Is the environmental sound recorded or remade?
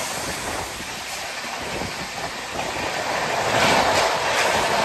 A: recorded